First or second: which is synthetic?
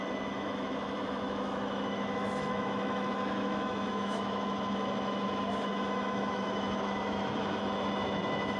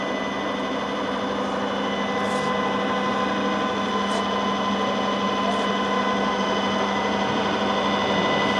first